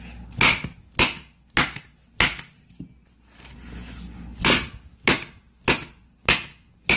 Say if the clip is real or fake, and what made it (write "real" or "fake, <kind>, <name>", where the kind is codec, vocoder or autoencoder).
real